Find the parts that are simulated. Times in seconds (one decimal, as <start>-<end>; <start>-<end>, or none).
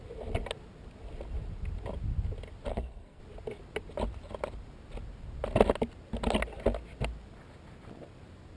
2.7-3.2